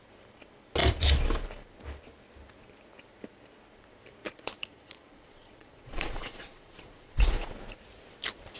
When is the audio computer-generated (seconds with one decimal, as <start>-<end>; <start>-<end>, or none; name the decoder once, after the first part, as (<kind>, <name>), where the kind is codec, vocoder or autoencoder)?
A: 4.2-7.5 (vocoder, Vocos)